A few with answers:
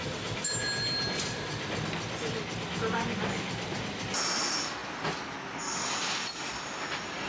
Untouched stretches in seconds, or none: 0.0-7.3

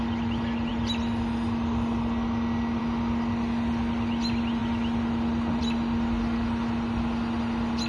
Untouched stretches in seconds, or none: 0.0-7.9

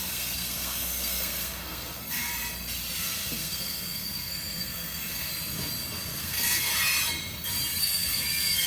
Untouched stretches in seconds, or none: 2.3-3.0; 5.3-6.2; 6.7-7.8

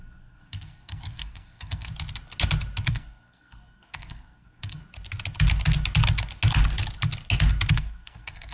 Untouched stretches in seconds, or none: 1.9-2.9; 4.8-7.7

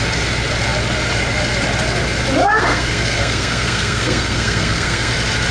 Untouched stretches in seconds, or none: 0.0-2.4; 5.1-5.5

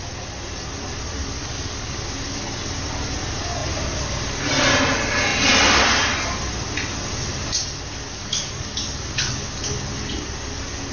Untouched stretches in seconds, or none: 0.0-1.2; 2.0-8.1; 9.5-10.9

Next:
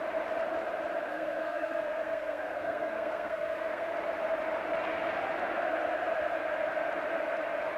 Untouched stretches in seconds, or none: 0.0-1.1; 3.9-7.8